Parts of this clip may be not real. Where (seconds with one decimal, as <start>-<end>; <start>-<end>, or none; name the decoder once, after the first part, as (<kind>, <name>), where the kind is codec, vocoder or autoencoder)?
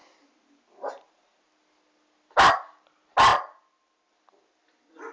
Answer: none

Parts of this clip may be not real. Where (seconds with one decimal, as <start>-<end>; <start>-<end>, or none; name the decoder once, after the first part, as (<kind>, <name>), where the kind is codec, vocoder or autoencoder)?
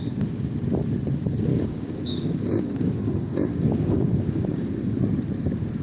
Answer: 1.5-5.0 (codec, DAC)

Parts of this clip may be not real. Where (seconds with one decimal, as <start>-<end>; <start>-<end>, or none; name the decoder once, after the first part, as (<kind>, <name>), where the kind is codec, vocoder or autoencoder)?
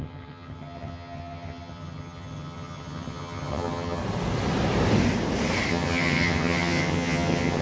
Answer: 0.0-4.0 (vocoder, HiFi-GAN); 5.7-7.6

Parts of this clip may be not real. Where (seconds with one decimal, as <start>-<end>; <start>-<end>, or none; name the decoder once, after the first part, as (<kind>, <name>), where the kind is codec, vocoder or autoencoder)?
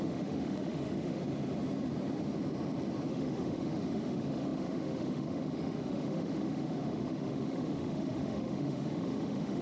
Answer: 0.0-1.2 (autoencoder, DAC-VAE); 3.1-9.6